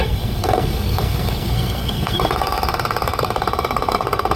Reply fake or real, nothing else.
fake